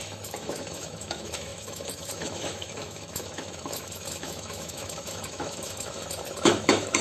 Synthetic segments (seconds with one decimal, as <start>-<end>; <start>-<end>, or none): 0.0-7.0

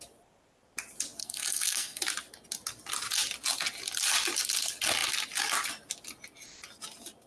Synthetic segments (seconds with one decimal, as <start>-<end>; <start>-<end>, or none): 1.2-2.0

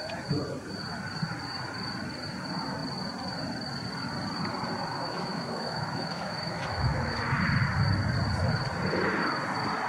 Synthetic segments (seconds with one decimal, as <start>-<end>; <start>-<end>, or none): 4.9-7.2

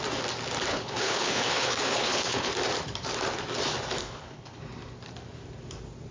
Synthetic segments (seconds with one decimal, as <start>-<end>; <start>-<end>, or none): 0.7-2.5; 4.0-4.6

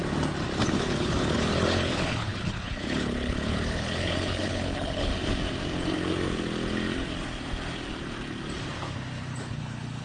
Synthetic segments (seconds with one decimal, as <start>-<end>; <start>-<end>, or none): 0.6-5.1; 9.3-10.0

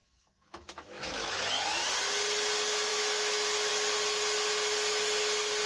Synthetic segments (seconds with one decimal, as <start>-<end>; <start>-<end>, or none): 0.0-1.3; 2.9-3.7

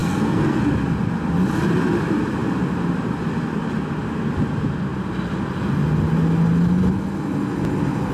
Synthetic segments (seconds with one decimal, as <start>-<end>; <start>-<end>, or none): 0.0-0.6

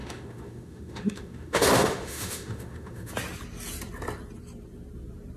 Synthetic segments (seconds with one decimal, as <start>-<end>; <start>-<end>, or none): 0.0-3.1